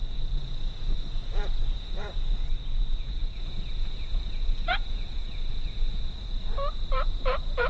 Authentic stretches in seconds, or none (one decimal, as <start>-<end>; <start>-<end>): none